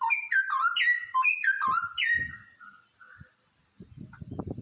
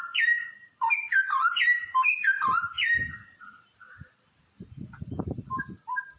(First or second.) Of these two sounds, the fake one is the second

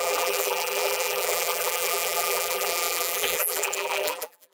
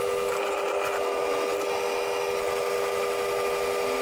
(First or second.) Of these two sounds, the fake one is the first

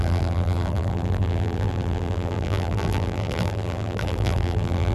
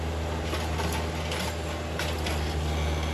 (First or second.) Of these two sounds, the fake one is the first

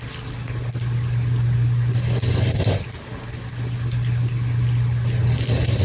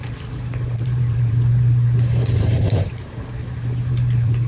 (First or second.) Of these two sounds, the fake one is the second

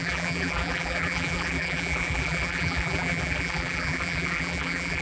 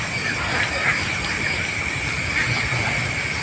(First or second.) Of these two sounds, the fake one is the first